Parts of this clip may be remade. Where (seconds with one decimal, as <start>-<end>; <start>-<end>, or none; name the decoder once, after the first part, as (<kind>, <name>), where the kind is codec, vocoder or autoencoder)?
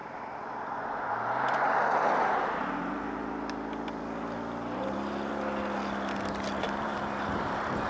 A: 4.7-5.3 (vocoder, BigVGAN v2); 6.6-7.9